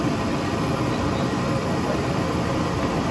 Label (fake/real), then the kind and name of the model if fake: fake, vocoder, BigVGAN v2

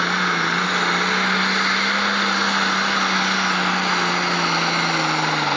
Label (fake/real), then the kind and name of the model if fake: real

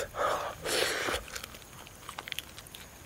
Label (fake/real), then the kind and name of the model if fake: real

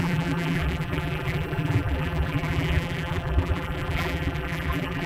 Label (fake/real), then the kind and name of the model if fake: fake, vocoder, BigVGAN v2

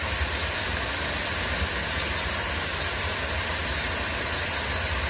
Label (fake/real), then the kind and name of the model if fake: real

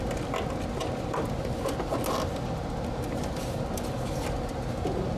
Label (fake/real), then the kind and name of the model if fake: real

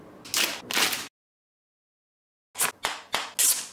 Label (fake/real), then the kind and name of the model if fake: real